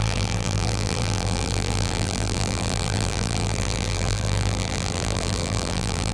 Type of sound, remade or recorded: remade